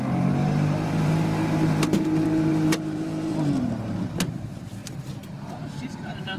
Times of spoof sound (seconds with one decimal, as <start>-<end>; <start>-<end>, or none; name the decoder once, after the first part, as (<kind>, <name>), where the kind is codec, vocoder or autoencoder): 0.0-6.4 (vocoder, BigVGAN v2)